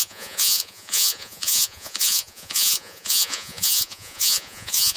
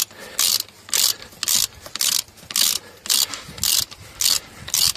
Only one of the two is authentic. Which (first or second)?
second